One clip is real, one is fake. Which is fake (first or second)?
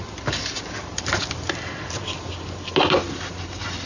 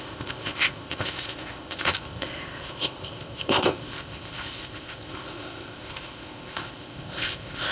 second